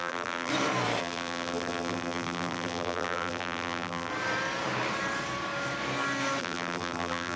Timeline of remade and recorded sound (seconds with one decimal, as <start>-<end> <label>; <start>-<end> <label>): 0.0-0.5 remade; 0.5-1.0 recorded; 1.0-4.1 remade; 4.1-6.4 recorded; 6.4-7.4 remade